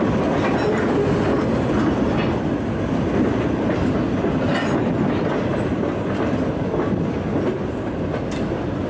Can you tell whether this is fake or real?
real